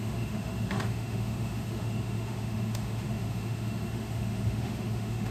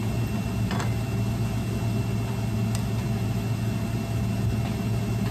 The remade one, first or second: first